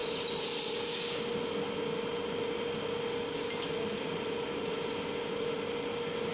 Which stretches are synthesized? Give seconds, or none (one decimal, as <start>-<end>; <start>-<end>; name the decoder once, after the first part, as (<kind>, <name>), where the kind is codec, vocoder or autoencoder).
none